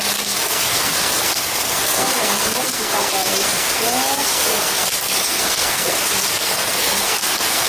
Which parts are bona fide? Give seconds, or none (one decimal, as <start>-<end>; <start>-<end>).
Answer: none